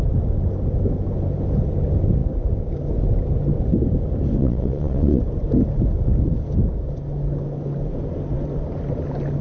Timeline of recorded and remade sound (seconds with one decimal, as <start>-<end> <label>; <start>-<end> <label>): 0.0-4.4 recorded; 4.4-5.2 remade; 5.2-9.4 recorded

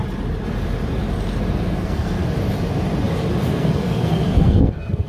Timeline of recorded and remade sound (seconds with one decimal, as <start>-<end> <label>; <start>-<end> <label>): 0.0-1.5 recorded; 1.5-2.2 remade; 2.2-3.4 recorded; 3.4-5.1 remade

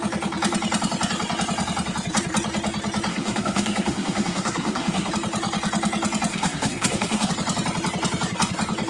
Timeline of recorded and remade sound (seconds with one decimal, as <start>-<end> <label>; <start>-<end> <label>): 0.0-3.1 recorded; 3.1-5.1 remade; 5.1-6.3 recorded; 6.3-7.3 remade; 7.3-8.9 recorded

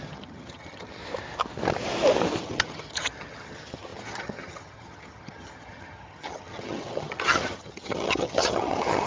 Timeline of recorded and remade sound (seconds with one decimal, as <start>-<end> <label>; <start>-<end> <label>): 0.0-1.0 remade; 1.0-2.4 recorded; 2.4-9.1 remade

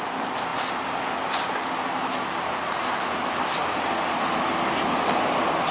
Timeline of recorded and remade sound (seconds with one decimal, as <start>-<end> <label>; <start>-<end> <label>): 0.0-5.7 recorded

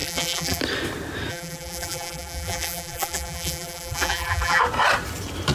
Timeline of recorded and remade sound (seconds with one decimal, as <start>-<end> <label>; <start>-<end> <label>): 0.0-0.6 remade; 0.6-1.3 recorded; 1.3-4.6 remade; 4.6-5.5 recorded

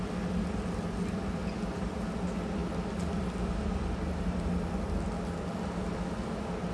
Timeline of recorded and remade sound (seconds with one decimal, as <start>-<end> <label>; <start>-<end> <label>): 0.0-6.7 recorded

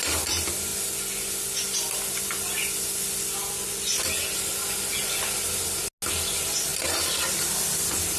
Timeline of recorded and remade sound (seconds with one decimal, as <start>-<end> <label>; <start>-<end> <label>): 0.0-8.2 recorded